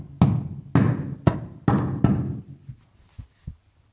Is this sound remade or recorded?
recorded